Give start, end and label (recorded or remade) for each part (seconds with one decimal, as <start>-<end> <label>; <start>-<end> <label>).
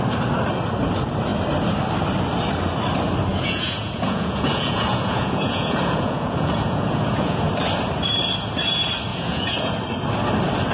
0.0-3.3 recorded; 3.3-7.5 remade; 7.5-9.1 recorded; 9.1-9.7 remade; 9.7-10.7 recorded